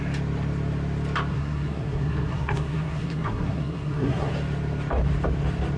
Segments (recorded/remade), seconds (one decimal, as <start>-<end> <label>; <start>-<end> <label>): 0.0-1.3 recorded; 1.3-4.3 remade; 4.3-5.8 recorded